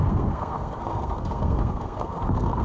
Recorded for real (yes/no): no